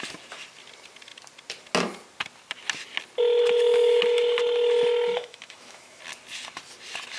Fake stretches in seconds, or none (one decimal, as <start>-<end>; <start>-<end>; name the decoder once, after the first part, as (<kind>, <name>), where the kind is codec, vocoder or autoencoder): 5.1-6.0 (autoencoder, DAC-VAE)